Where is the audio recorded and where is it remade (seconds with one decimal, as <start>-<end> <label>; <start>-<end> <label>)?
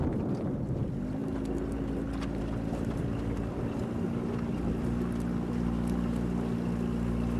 0.0-7.4 recorded